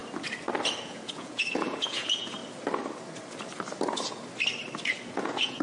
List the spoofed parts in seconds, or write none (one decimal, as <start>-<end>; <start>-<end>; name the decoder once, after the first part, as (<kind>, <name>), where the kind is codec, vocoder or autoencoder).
0.8-2.4 (vocoder, Vocos); 5.1-5.6